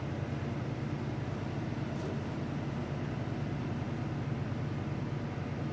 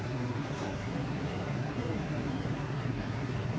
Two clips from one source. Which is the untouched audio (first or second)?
first